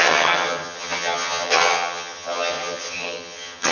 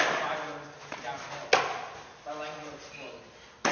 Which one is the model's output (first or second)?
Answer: first